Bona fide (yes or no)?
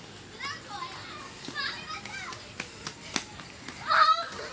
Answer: yes